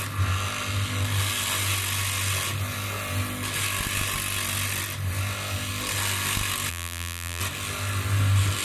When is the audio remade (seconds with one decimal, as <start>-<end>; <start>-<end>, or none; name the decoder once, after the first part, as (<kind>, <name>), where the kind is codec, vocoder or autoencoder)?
6.7-7.4 (vocoder, BigVGAN v2)